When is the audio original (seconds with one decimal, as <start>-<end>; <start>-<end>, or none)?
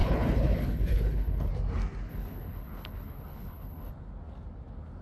1.5-2.1; 3.9-5.0